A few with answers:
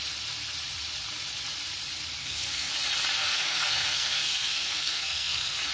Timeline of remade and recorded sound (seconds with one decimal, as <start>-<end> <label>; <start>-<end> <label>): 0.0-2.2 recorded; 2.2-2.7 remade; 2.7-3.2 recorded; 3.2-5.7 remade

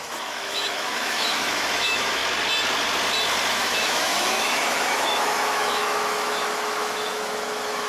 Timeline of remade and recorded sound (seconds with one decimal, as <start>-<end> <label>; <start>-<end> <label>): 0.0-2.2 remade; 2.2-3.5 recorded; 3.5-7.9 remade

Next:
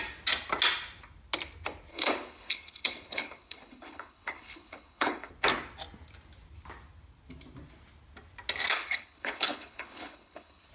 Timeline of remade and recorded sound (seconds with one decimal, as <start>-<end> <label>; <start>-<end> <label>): 0.0-1.9 recorded; 1.9-5.3 remade; 5.3-8.7 recorded; 8.7-10.7 remade

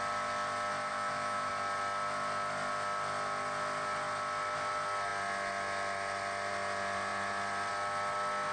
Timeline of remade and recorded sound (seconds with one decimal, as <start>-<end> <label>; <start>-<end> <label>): 0.0-0.9 recorded; 0.9-1.5 remade; 1.5-8.5 recorded

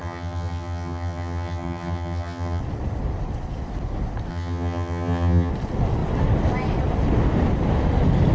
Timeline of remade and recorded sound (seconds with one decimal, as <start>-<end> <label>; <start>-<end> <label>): 0.0-2.6 remade; 2.6-4.3 recorded; 4.3-5.5 remade; 5.5-8.3 recorded

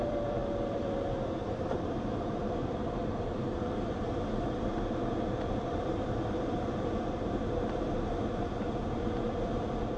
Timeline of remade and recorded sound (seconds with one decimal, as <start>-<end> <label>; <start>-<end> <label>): 0.0-10.0 remade

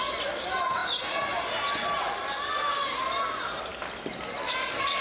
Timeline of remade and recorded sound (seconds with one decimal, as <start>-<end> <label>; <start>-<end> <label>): 0.0-5.0 recorded